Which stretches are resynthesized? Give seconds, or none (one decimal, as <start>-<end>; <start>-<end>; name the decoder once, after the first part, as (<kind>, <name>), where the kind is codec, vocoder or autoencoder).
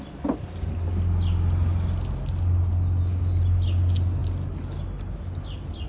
none